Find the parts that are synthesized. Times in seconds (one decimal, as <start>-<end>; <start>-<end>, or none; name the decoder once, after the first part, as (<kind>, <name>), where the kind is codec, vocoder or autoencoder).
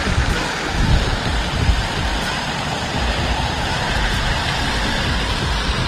2.1-4.9 (vocoder, BigVGAN v2)